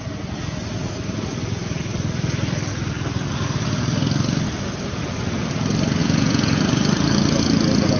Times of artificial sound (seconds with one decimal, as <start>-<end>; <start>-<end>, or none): 6.0-6.6